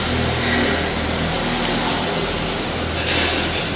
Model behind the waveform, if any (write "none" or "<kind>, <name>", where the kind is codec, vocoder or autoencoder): none